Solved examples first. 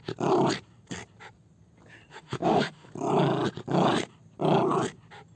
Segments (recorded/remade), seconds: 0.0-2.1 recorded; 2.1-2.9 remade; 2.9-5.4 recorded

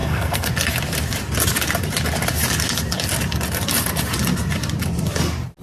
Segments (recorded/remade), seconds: 0.0-0.5 remade; 0.5-5.6 recorded

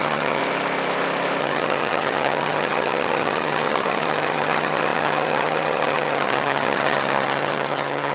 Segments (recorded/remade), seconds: 0.0-0.4 remade; 0.4-1.4 recorded; 1.4-8.1 remade

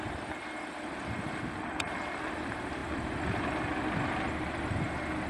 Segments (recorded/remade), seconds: 0.0-5.3 recorded

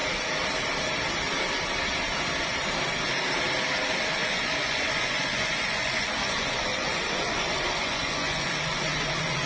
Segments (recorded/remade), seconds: 0.0-4.2 recorded; 4.2-9.5 remade

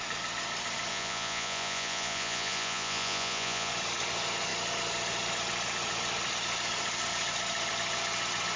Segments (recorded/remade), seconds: 0.0-0.9 recorded; 0.9-3.7 remade; 3.7-8.6 recorded